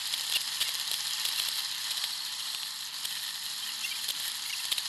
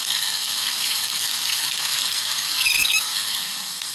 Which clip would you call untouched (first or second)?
first